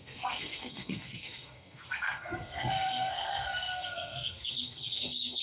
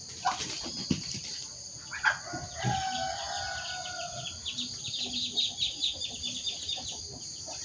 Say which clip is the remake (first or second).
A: first